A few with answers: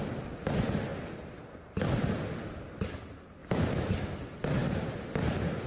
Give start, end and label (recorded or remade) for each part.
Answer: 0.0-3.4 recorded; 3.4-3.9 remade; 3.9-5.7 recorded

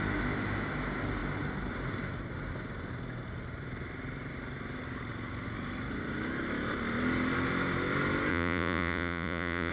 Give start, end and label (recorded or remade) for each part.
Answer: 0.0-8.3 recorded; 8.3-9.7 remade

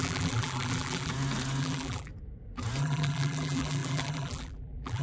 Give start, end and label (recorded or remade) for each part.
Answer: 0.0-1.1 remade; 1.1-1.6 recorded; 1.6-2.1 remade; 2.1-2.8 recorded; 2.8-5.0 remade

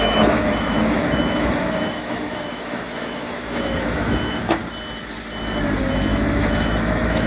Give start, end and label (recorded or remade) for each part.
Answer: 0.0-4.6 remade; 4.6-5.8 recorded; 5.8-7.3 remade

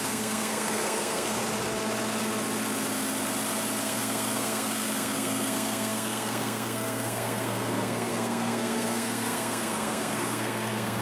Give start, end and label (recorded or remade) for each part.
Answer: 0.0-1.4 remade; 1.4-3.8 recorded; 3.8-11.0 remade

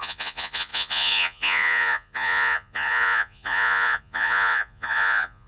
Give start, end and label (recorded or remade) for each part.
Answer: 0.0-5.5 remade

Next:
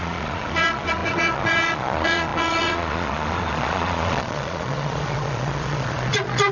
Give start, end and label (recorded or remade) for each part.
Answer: 0.0-6.5 remade

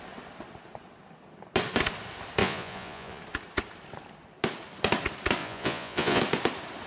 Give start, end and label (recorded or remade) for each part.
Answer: 0.0-2.4 recorded; 2.4-3.2 remade; 3.2-5.4 recorded; 5.4-6.2 remade; 6.2-6.9 recorded